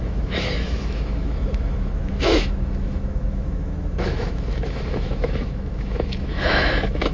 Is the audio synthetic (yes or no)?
yes